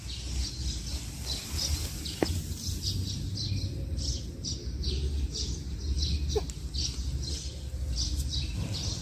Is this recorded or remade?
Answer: recorded